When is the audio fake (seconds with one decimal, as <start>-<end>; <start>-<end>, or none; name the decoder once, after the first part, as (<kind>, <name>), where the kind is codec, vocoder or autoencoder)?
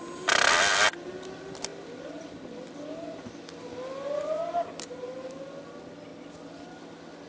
none